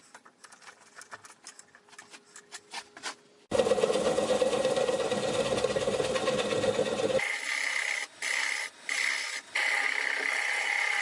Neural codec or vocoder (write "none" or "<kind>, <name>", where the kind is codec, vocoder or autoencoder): none